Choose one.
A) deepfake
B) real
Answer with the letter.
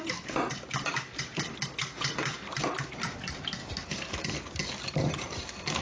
B